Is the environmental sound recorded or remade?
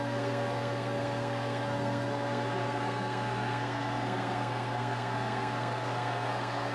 remade